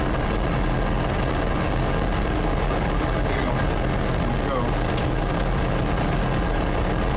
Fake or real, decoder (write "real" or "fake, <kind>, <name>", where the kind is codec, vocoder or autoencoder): real